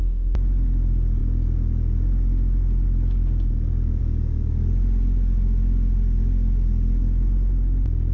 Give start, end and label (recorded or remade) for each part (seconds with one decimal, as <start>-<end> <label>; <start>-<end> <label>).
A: 0.0-8.1 recorded